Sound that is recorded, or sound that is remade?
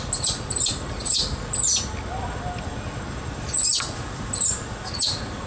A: recorded